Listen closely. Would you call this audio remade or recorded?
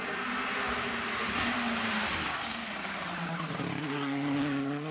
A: recorded